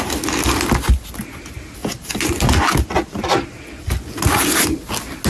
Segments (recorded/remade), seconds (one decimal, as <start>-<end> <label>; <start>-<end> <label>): 0.0-5.3 recorded